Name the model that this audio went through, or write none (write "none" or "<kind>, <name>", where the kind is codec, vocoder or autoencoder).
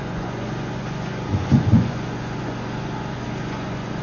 vocoder, Vocos